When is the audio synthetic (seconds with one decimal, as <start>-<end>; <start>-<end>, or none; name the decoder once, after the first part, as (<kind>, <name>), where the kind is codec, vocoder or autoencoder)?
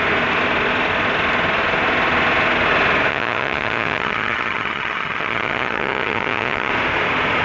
3.1-6.7 (vocoder, HiFi-GAN)